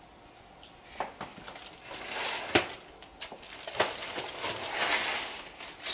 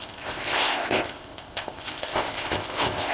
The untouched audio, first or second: first